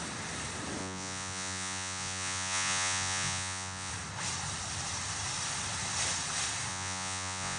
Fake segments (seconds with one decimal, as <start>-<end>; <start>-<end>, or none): 0.8-3.9; 6.7-7.6